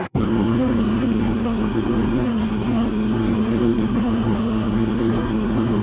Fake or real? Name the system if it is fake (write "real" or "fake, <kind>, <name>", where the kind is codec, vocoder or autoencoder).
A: fake, codec, SNAC